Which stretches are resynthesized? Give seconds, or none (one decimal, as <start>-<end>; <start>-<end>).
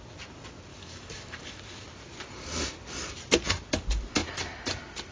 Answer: 0.7-1.6